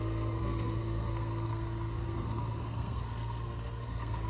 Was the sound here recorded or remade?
remade